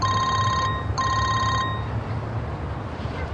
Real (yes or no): yes